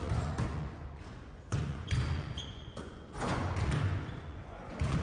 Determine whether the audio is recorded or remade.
remade